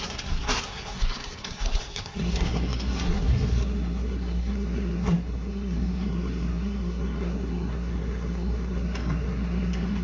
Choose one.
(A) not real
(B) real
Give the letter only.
A